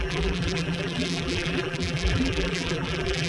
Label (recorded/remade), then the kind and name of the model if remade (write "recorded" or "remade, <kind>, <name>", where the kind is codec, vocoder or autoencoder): remade, vocoder, BigVGAN v2